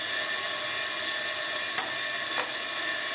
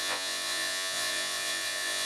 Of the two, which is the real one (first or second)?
first